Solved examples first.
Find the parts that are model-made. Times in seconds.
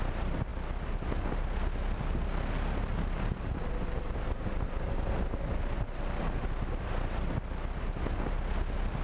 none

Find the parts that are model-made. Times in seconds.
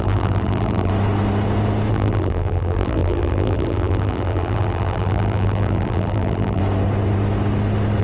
0.0-0.9 (vocoder, BigVGAN v2); 1.9-6.6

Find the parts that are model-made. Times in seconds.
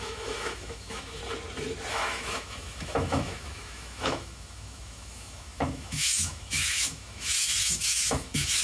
0.0-1.2 (autoencoder, DAC-VAE); 1.9-8.6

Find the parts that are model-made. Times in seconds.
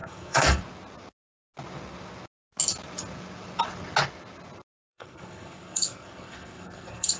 0.0-0.6 (codec, SNAC); 4.9-7.2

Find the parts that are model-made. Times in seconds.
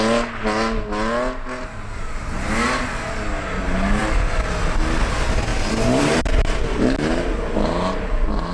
5.5-6.3 (vocoder, BigVGAN v2)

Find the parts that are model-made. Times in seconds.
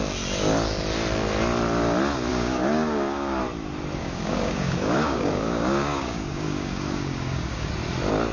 2.3-3.4 (codec, DAC); 4.0-7.7